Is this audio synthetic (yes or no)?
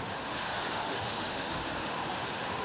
yes